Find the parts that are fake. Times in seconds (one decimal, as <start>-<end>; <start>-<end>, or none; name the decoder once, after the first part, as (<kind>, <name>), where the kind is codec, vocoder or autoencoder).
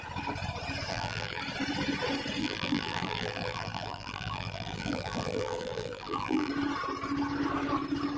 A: 0.9-1.4 (vocoder, BigVGAN v2); 2.4-6.5